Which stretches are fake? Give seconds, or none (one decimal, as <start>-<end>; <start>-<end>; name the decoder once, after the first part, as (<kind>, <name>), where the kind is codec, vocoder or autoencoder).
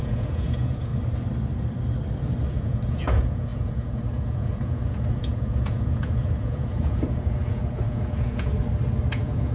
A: 0.0-0.9 (vocoder, Vocos); 2.5-8.5; 9.1-9.5